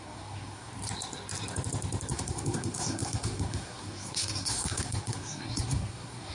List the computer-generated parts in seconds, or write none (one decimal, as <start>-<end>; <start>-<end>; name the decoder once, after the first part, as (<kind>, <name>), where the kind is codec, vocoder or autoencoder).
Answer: 0.0-0.7 (codec, SNAC); 2.1-6.3